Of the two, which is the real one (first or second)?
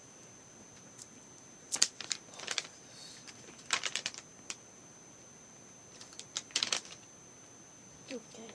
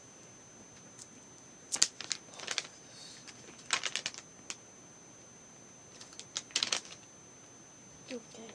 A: second